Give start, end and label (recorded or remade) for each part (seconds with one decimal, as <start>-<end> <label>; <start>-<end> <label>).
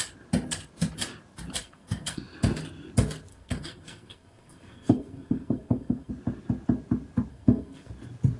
0.0-1.6 recorded; 1.6-2.2 remade; 2.2-3.3 recorded; 3.3-6.1 remade; 6.1-7.3 recorded; 7.3-7.9 remade; 7.9-8.4 recorded